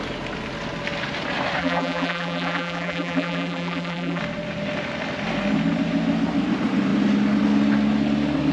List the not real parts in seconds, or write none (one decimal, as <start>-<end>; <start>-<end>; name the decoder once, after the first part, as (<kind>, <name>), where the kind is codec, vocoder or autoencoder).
1.6-4.2 (vocoder, BigVGAN v2)